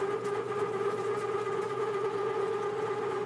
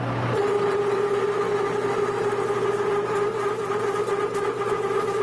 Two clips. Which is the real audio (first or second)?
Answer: second